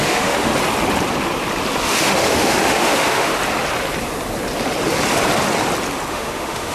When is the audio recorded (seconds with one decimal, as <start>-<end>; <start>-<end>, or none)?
0.5-1.8; 3.3-6.1